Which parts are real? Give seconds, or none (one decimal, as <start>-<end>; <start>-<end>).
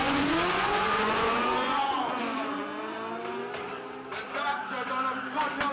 2.7-5.7